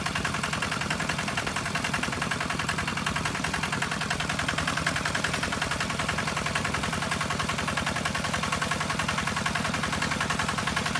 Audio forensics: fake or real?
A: real